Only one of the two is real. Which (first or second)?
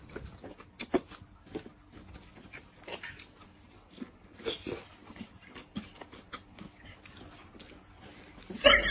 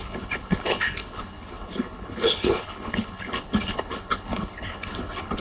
first